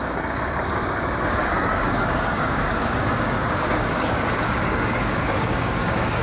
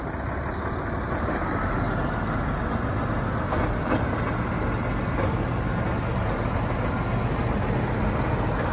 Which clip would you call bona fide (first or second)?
second